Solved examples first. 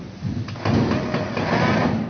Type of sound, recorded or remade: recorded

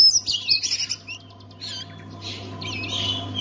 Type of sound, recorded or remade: recorded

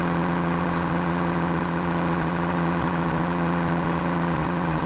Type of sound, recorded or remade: remade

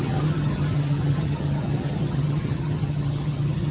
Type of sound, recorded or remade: remade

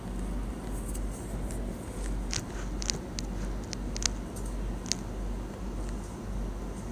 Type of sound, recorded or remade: recorded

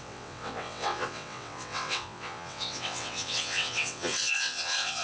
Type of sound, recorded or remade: remade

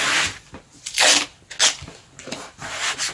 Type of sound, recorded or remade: recorded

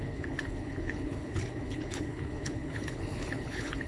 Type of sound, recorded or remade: remade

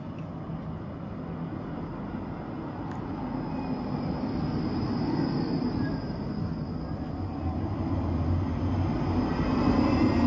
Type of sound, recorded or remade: recorded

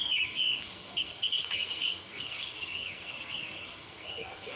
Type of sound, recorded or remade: remade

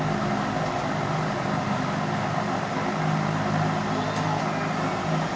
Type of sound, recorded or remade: recorded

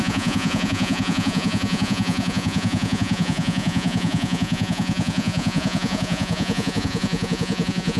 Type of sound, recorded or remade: remade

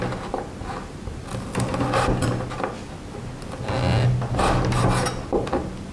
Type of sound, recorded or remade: recorded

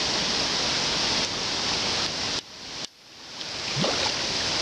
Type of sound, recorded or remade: recorded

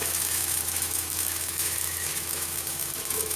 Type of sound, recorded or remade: remade